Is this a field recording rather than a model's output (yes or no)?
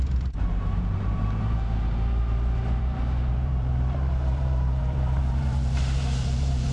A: no